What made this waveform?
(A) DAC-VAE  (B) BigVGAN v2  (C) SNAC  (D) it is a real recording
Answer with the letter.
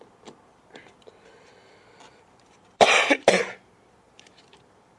B